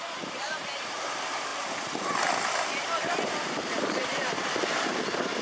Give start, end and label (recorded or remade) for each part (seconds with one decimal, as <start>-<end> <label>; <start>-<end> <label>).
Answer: 0.0-5.4 remade